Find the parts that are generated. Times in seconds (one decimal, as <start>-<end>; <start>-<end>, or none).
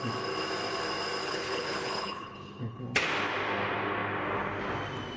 1.2-2.8